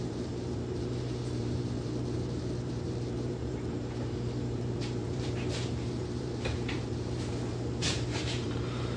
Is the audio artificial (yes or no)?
yes